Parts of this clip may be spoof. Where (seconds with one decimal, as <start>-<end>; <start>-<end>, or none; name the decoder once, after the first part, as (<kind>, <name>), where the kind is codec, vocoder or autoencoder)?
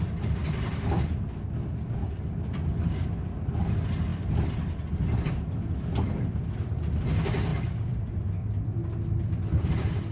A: 0.4-1.1 (vocoder, BigVGAN v2); 7.5-8.0; 8.4-9.7